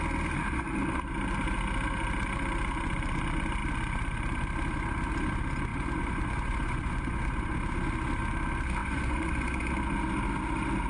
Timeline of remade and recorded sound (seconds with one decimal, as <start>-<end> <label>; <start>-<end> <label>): 0.0-5.7 recorded; 5.7-7.6 remade; 7.6-8.8 recorded; 8.8-9.7 remade; 9.7-10.9 recorded